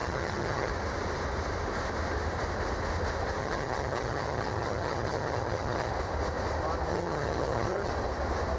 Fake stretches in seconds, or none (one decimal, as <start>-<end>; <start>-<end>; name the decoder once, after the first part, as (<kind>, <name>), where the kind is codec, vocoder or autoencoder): 0.0-0.7 (vocoder, HiFi-GAN); 3.4-5.9; 6.9-7.9